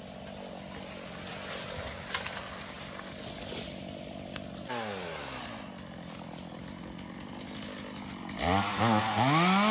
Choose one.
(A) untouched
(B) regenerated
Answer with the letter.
A